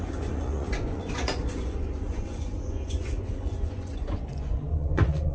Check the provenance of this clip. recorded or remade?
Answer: remade